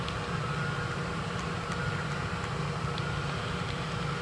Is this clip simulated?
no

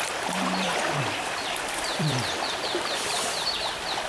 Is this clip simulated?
yes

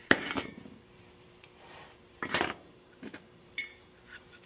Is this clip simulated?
yes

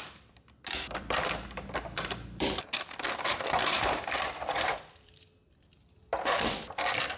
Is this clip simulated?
yes